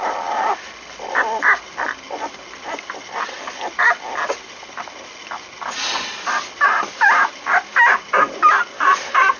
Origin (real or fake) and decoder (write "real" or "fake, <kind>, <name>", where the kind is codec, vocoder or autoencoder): real